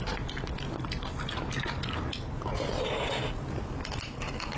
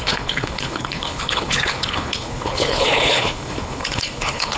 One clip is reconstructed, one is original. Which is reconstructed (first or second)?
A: second